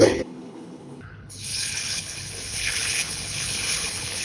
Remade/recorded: remade